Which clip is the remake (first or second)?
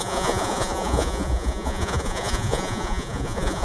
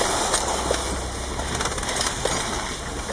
first